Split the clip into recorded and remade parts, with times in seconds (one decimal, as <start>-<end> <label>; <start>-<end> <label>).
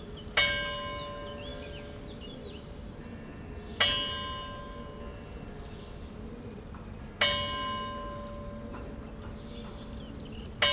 0.0-10.7 recorded